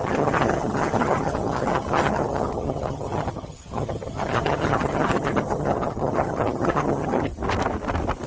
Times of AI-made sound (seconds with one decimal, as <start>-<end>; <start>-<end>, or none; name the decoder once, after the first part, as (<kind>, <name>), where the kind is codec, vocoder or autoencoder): 0.0-7.3 (vocoder, HiFi-GAN)